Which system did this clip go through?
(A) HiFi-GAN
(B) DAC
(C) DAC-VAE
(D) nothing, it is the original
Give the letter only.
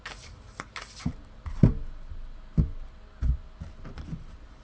D